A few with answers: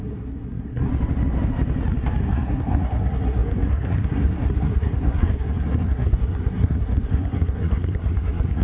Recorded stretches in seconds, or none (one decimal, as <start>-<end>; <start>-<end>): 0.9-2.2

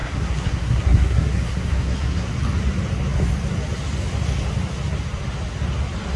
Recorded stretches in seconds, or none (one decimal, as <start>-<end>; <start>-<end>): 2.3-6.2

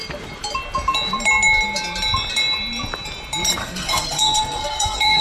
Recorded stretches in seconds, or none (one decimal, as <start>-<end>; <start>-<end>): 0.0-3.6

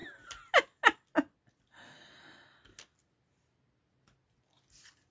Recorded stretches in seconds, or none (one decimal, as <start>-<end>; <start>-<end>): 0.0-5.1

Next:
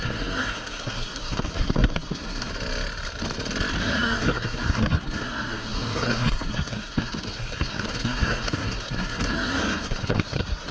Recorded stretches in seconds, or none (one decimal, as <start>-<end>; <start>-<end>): 2.5-3.8

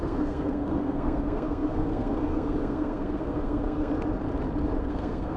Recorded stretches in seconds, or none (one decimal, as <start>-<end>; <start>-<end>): 3.9-4.8

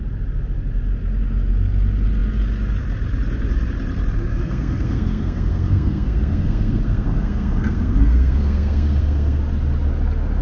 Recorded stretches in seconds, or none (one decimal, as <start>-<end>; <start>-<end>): 0.0-4.3; 9.4-10.4

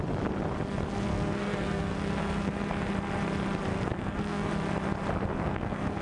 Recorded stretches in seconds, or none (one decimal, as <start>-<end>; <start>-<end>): 0.0-1.1; 2.5-3.7; 4.5-5.4